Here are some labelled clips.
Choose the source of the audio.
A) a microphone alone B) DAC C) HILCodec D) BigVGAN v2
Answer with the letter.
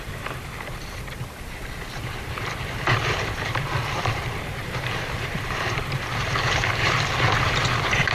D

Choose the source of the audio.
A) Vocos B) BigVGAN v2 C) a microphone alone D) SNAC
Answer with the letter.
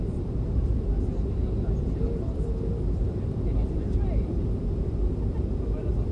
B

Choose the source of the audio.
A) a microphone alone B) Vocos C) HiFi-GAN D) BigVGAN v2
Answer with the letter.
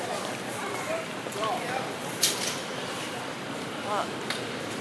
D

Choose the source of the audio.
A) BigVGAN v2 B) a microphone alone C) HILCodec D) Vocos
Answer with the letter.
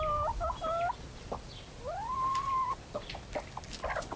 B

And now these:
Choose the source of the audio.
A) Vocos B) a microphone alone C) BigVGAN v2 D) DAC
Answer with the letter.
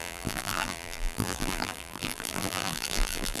C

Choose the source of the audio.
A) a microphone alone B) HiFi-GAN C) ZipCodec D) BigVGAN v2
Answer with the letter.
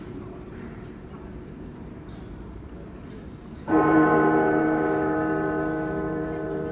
D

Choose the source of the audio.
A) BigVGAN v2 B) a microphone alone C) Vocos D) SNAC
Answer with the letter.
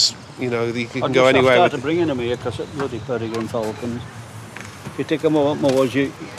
B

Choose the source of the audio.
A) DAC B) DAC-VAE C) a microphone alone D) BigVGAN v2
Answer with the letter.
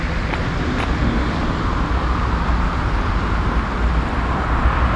C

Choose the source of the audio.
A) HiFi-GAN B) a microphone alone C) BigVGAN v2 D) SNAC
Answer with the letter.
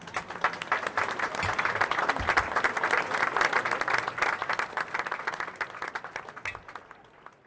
B